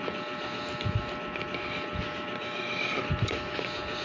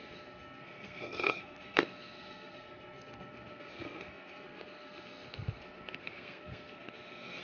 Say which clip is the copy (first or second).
second